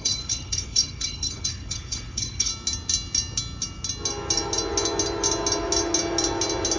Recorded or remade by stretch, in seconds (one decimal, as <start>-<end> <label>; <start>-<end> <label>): 0.0-2.5 remade; 2.5-6.8 recorded